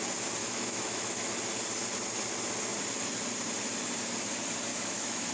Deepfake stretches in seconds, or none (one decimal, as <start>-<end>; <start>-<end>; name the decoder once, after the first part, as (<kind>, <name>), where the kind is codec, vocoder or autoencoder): 0.4-1.3 (autoencoder, DAC-VAE); 4.7-5.3